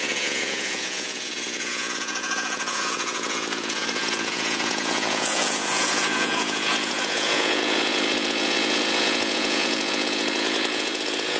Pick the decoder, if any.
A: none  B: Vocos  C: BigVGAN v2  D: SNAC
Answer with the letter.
B